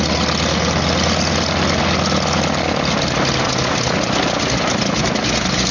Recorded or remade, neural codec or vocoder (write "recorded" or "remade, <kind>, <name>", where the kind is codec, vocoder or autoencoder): recorded